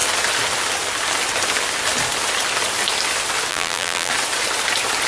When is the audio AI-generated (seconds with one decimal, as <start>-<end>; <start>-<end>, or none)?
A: 3.5-4.1